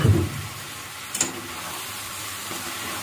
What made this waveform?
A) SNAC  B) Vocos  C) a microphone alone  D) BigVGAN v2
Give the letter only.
D